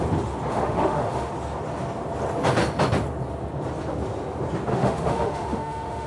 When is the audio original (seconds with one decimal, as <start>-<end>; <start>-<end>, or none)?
0.0-0.5; 1.3-4.7

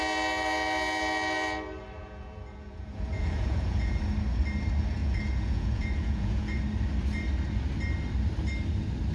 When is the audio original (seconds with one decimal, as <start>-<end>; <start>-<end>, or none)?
0.0-2.0; 4.1-5.0; 6.6-9.1

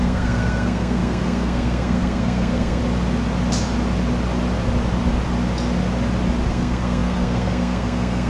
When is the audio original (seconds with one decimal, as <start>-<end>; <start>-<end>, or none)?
2.8-6.5